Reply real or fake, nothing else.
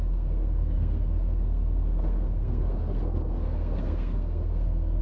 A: fake